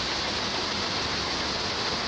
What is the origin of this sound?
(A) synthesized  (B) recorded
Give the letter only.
B